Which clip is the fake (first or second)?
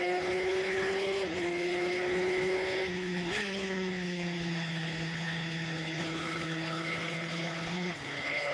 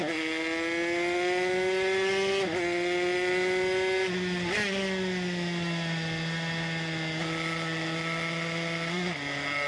first